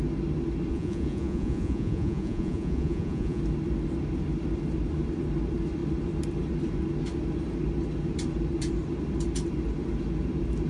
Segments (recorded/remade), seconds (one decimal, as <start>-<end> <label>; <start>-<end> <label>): 0.0-0.7 recorded; 0.7-3.4 remade; 3.4-10.7 recorded